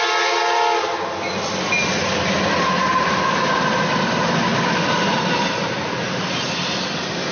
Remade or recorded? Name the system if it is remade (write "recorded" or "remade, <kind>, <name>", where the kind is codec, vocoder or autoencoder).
recorded